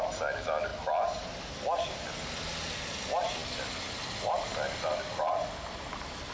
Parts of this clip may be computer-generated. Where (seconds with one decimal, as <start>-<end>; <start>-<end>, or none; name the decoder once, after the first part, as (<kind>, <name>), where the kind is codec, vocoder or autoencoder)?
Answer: none